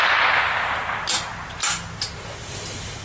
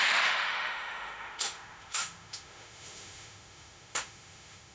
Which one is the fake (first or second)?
second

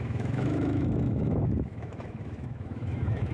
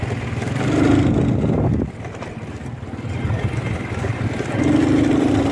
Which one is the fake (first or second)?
first